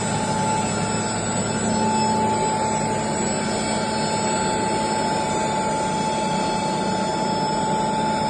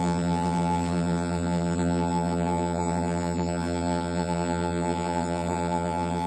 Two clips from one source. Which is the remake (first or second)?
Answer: second